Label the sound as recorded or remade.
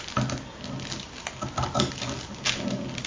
recorded